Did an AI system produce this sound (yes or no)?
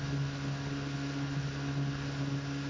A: no